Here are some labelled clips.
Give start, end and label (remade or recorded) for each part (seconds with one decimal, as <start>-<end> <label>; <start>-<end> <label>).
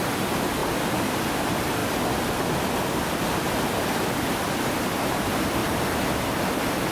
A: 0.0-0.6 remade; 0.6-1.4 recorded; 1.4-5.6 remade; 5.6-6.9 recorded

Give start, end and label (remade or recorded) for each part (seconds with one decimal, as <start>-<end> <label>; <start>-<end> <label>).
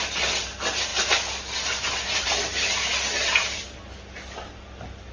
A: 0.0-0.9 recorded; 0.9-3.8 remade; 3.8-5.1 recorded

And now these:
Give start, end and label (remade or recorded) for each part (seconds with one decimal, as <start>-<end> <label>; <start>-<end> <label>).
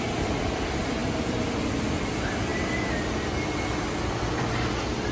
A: 0.0-1.0 recorded; 1.0-2.1 remade; 2.1-5.1 recorded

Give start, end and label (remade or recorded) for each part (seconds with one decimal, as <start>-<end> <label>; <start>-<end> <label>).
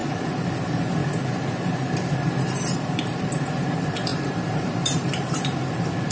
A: 0.0-0.6 recorded; 0.6-1.0 remade; 1.0-3.0 recorded; 3.0-6.1 remade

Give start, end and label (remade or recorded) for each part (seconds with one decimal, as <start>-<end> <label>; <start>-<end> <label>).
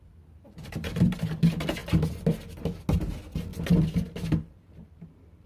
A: 0.0-1.8 remade; 1.8-3.0 recorded; 3.0-3.5 remade; 3.5-5.5 recorded